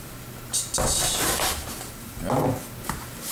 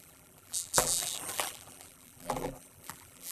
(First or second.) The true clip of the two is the first